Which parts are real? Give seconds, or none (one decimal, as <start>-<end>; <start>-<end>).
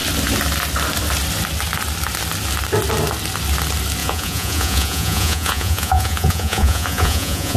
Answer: 0.0-4.0